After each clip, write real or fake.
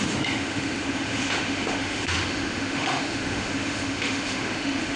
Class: fake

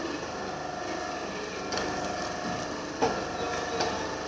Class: real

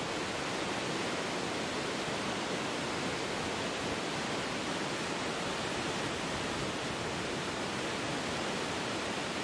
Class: real